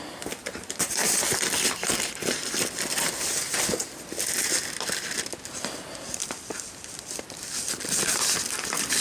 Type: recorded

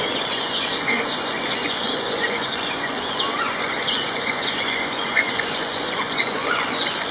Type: remade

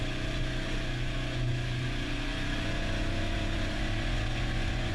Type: remade